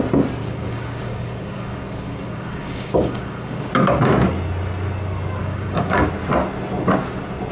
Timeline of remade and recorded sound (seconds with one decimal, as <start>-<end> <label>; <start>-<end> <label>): 0.0-0.4 recorded; 0.4-3.7 remade; 3.7-5.4 recorded; 5.4-6.1 remade; 6.1-7.5 recorded